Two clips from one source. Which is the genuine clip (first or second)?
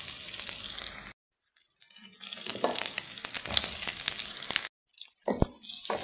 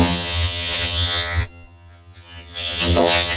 first